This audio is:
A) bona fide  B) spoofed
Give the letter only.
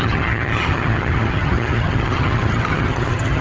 B